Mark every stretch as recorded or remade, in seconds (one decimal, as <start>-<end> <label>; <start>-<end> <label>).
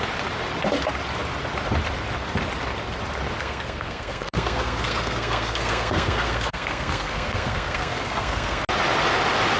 0.0-3.4 recorded; 3.4-8.6 remade; 8.6-9.6 recorded